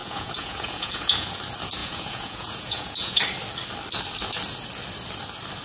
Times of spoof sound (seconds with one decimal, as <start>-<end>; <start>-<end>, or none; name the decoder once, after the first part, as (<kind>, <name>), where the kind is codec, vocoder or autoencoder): 0.0-1.4 (vocoder, Vocos); 1.8-3.2